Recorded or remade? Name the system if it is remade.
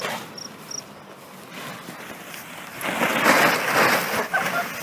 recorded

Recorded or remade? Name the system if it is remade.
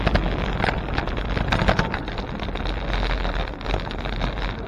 recorded